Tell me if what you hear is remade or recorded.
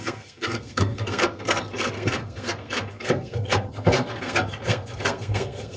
remade